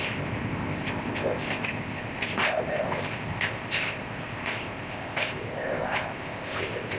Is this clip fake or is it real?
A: fake